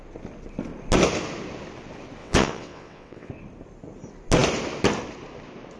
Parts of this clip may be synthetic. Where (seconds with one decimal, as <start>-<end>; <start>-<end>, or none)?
2.2-3.3